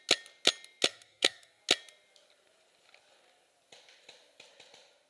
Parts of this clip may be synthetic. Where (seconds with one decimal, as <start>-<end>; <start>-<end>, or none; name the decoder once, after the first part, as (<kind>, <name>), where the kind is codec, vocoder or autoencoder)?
0.9-1.6 (codec, SNAC)